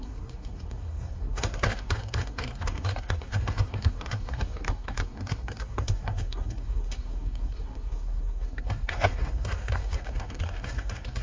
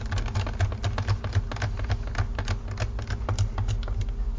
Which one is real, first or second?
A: second